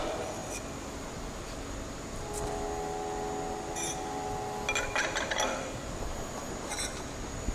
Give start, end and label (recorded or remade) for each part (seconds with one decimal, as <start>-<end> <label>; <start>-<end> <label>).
0.0-6.1 recorded; 6.1-6.7 remade; 6.7-7.5 recorded